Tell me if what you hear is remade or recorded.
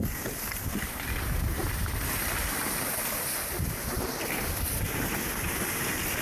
recorded